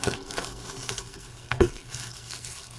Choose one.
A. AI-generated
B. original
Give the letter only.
A